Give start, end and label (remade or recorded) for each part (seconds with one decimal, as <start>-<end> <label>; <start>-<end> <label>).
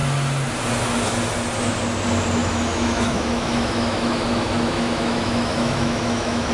0.0-2.4 recorded; 2.4-6.5 remade